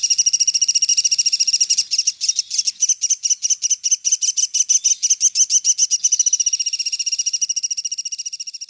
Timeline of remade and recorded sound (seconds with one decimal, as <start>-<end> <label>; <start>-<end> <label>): 0.0-8.7 recorded